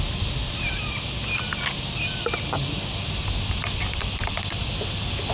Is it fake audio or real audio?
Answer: real